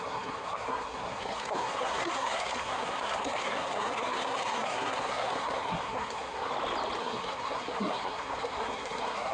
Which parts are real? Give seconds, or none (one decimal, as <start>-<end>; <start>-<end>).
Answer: 6.5-7.0